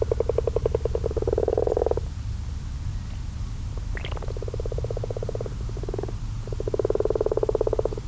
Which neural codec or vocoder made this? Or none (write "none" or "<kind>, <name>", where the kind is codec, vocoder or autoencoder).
none